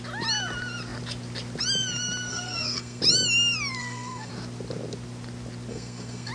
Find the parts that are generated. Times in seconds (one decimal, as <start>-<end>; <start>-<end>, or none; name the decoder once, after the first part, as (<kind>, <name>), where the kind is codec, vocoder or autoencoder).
2.3-3.0 (codec, SNAC); 3.8-4.3; 5.7-6.3